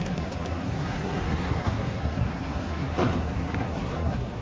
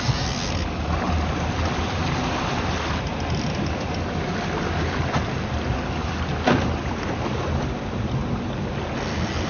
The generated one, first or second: first